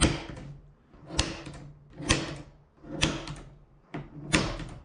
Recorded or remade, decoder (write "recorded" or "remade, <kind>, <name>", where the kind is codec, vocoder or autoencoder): recorded